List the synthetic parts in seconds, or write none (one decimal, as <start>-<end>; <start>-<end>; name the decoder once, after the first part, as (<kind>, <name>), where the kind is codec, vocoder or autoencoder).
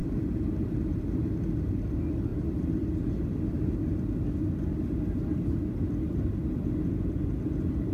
none